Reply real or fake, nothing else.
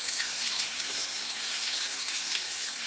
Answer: fake